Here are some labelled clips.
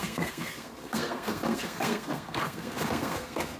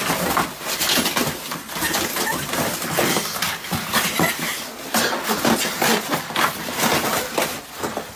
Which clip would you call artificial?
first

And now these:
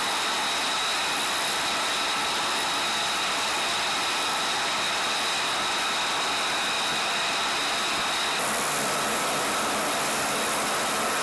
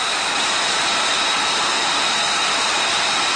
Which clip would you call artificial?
second